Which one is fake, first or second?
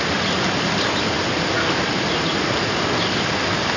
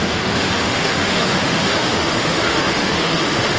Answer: second